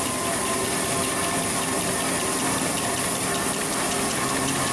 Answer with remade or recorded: remade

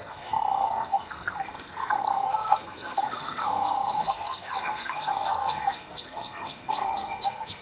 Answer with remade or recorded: remade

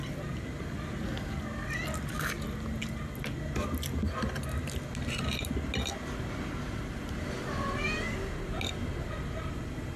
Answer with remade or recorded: recorded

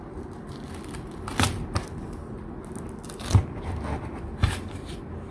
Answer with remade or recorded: recorded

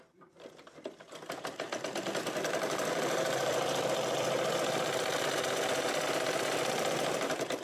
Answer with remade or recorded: recorded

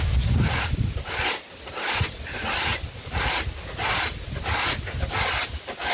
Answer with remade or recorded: recorded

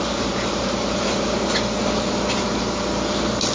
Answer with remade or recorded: recorded